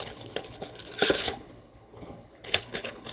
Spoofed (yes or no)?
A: yes